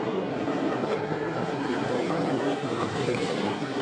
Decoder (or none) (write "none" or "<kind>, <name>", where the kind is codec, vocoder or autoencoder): codec, SNAC